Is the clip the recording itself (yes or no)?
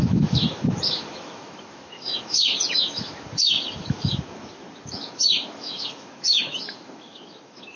no